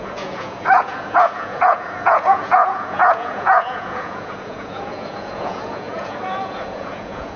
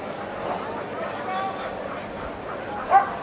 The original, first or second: second